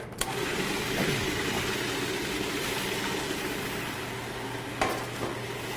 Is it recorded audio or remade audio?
recorded